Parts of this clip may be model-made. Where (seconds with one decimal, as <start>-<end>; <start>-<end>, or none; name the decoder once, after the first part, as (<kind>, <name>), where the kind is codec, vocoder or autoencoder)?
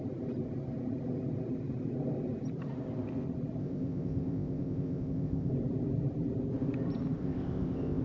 3.6-5.5 (codec, ZipCodec); 7.2-8.0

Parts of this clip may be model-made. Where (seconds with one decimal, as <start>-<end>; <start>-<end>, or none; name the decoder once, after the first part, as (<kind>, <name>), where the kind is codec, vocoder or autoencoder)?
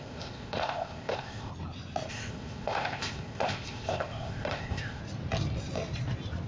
0.0-1.5 (codec, ZipCodec); 2.1-5.0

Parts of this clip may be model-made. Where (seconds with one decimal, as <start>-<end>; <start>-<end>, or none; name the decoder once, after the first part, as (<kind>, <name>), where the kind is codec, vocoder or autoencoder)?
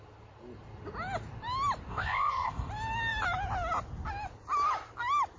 1.9-2.7 (codec, ZipCodec)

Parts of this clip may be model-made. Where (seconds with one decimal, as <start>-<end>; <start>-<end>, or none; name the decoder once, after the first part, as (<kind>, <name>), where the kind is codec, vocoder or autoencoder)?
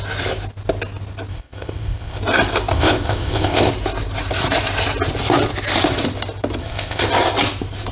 1.3-2.2 (codec, ZipCodec); 2.7-3.7; 6.6-7.1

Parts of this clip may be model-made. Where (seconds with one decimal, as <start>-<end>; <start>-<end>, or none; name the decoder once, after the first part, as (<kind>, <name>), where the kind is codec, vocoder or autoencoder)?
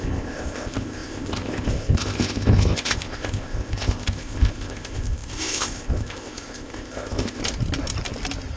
0.0-7.4 (codec, ZipCodec)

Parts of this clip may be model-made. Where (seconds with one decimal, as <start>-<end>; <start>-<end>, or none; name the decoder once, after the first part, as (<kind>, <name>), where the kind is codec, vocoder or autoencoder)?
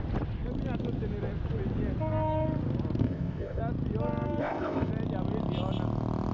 3.0-3.6 (codec, ZipCodec); 4.4-4.9